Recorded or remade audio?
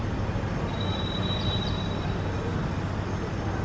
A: recorded